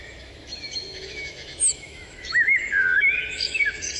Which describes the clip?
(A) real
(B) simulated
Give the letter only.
B